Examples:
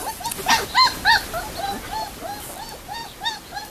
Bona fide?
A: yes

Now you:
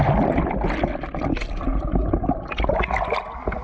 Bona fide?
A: yes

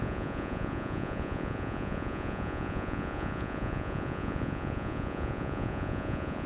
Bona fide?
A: no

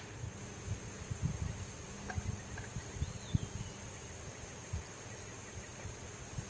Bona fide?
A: yes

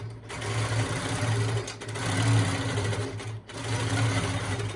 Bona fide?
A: yes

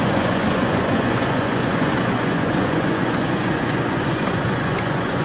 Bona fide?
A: no